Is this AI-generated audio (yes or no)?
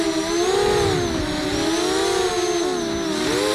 no